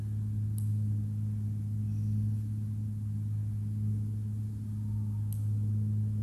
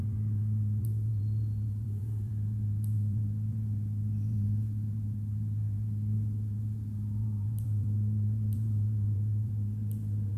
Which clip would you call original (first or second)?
first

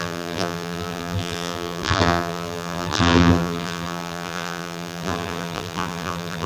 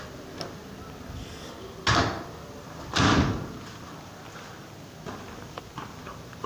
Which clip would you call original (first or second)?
second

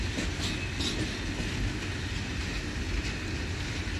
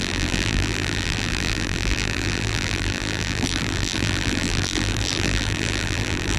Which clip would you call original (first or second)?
first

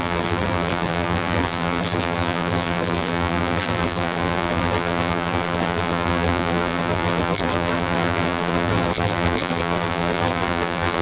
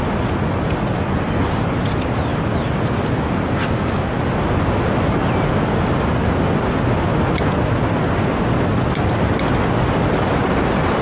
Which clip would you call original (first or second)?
second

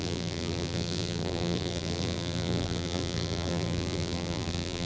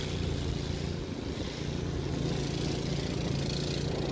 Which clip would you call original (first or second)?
second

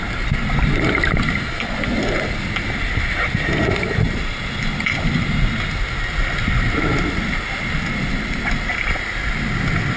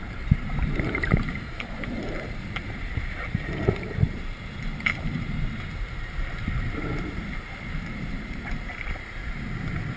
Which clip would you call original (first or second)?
first